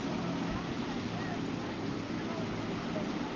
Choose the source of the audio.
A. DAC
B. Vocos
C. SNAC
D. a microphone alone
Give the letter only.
D